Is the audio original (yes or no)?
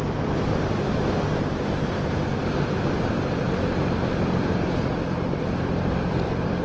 no